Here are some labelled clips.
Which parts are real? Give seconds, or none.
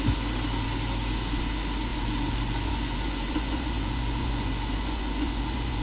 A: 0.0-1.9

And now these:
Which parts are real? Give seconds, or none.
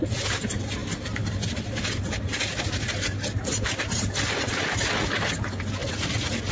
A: 0.0-5.8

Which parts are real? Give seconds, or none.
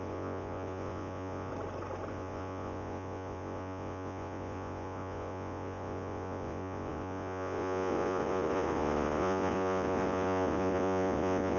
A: 1.5-2.1